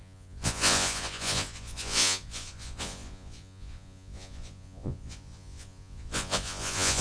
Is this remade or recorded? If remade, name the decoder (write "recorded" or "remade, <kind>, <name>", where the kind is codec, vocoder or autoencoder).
remade, vocoder, Vocos